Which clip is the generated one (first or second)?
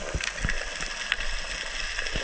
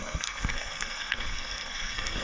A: second